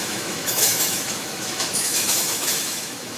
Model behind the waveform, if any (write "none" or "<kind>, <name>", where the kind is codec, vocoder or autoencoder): autoencoder, DAC-VAE